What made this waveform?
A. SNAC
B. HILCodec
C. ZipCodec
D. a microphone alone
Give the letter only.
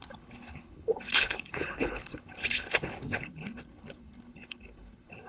B